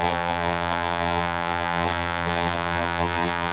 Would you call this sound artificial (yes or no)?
yes